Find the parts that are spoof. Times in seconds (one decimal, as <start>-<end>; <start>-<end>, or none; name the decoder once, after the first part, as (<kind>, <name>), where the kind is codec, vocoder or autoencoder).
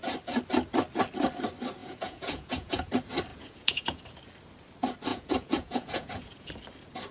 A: 1.8-2.9 (vocoder, Vocos); 3.3-4.0; 5.1-6.5